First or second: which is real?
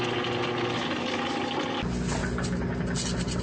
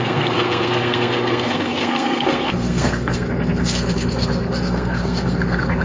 first